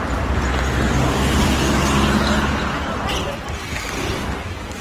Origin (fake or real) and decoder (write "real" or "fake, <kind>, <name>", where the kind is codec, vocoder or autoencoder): real